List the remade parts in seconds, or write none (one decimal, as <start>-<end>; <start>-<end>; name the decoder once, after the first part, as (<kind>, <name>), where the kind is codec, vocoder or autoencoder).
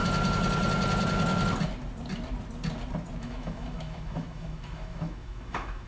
3.2-5.9 (autoencoder, DAC-VAE)